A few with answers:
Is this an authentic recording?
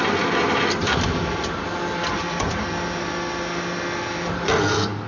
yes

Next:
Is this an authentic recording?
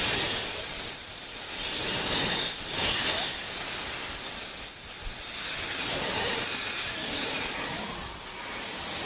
yes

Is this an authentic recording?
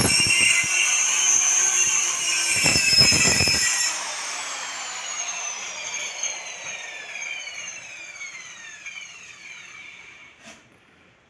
no